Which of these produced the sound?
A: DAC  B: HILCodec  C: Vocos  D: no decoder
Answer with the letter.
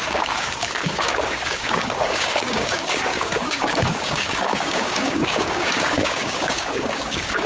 A